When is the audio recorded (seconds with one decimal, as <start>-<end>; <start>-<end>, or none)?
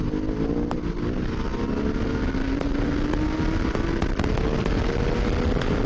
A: 0.0-5.9